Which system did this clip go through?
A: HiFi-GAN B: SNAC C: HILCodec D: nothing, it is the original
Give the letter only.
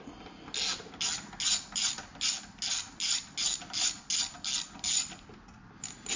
D